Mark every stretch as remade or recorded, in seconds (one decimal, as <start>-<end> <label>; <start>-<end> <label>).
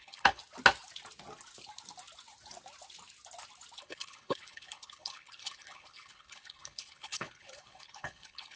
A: 0.0-0.4 remade; 0.4-3.8 recorded; 3.8-8.6 remade